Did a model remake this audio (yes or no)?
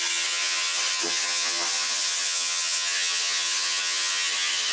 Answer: yes